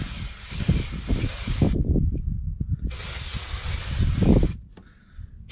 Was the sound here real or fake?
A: real